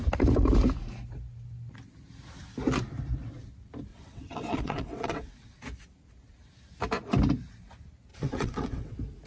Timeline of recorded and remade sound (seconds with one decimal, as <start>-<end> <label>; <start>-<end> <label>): 0.0-3.9 recorded; 3.9-5.3 remade; 5.3-8.1 recorded; 8.1-8.9 remade; 8.9-9.3 recorded